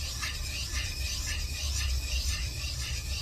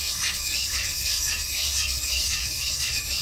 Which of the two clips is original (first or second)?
first